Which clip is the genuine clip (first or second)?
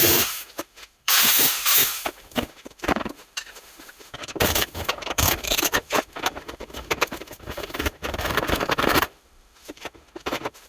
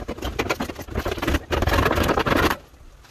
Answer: second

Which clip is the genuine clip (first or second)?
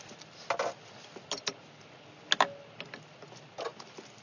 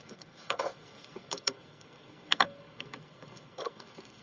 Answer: first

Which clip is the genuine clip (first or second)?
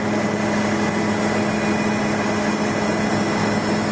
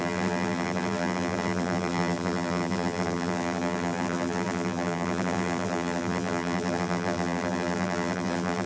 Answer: first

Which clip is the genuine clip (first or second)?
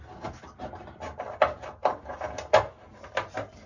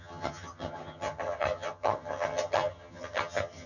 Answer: first